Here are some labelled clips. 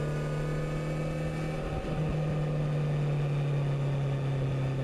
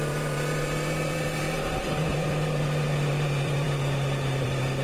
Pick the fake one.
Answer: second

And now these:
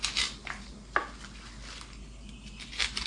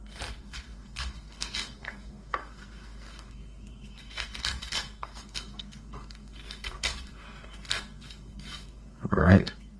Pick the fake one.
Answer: second